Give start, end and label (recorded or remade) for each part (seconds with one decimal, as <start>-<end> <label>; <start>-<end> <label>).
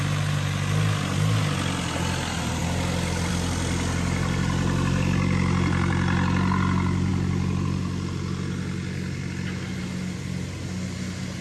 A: 0.0-11.4 recorded